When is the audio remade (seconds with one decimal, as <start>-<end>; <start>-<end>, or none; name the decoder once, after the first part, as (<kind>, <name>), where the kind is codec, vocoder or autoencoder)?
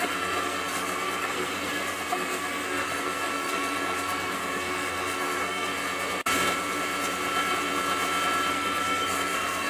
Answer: 0.0-5.7 (codec, SNAC); 8.5-9.7